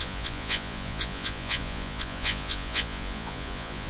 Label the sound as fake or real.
fake